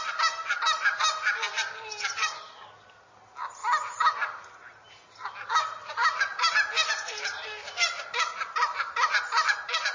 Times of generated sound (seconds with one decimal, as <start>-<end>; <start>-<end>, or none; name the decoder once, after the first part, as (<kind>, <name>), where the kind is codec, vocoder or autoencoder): 3.6-4.4 (vocoder, BigVGAN v2); 6.0-9.5